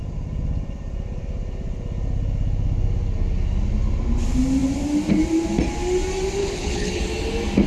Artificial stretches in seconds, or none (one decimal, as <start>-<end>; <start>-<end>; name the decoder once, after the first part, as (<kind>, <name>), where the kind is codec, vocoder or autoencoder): 6.4-7.0 (codec, HILCodec)